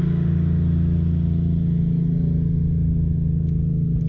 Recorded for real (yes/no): yes